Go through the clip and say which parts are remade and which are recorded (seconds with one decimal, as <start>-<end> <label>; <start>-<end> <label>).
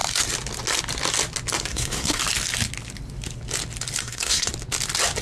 0.0-1.7 recorded; 1.7-2.2 remade; 2.2-4.0 recorded; 4.0-4.5 remade; 4.5-5.2 recorded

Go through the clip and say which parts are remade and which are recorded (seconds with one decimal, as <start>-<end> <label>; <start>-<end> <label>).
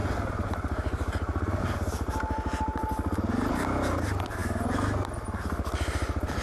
0.0-6.4 recorded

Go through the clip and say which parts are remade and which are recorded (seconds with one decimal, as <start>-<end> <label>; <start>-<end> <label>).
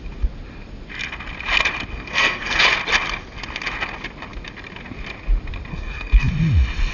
0.0-1.9 recorded; 1.9-2.6 remade; 2.6-5.7 recorded; 5.7-6.3 remade; 6.3-6.9 recorded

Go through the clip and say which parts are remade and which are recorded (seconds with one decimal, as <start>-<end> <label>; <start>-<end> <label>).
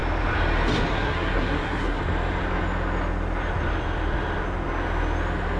0.0-0.9 recorded; 0.9-2.0 remade; 2.0-5.6 recorded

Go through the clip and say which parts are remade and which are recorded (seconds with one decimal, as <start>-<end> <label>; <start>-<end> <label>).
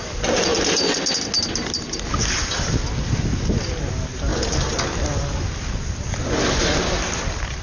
0.0-7.6 recorded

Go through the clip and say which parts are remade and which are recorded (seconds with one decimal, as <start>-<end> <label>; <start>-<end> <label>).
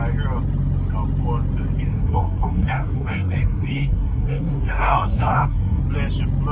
0.0-1.9 recorded; 1.9-5.8 remade; 5.8-6.5 recorded